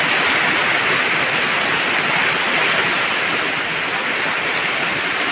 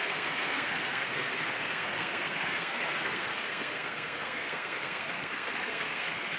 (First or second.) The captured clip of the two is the first